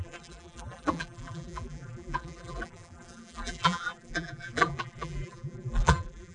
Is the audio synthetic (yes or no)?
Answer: yes